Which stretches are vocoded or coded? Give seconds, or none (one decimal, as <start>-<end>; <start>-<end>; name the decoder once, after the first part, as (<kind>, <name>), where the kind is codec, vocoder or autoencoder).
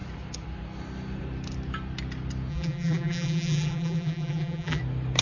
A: 2.5-4.8 (vocoder, BigVGAN v2)